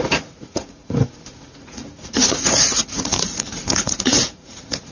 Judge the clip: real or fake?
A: fake